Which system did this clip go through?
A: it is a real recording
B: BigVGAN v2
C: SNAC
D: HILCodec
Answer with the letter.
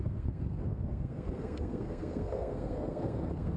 C